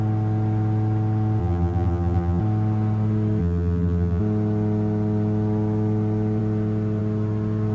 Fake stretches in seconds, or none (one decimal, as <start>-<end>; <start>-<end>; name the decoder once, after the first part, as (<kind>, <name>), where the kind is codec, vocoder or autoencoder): 1.4-2.4 (vocoder, BigVGAN v2); 3.4-4.2